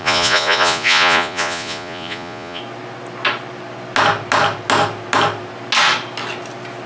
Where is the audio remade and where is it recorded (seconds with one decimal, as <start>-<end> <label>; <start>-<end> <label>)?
0.0-2.6 remade; 2.6-6.9 recorded